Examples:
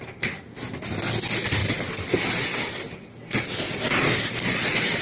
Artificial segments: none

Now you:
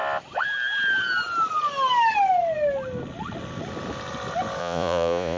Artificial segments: 4.6-5.4 (vocoder, Vocos)

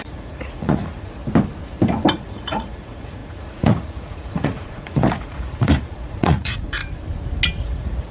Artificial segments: 0.0-1.2 (vocoder, Vocos); 2.1-6.8; 7.6-8.1